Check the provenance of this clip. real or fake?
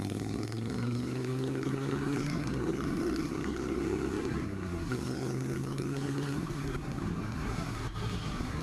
fake